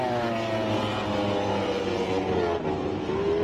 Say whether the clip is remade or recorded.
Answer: recorded